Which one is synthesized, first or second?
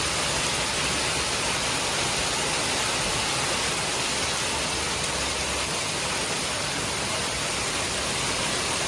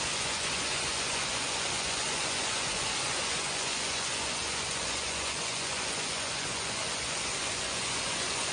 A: second